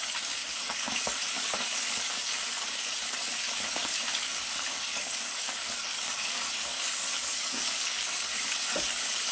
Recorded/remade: remade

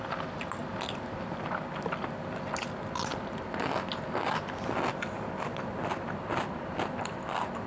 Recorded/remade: recorded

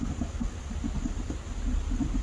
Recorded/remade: recorded